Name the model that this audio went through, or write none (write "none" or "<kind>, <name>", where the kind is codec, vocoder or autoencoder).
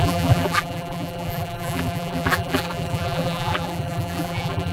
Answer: vocoder, BigVGAN v2